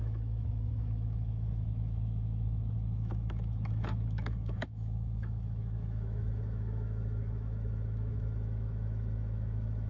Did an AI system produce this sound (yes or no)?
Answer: yes